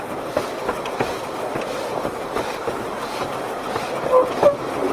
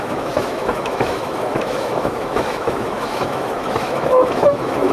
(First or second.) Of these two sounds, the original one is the first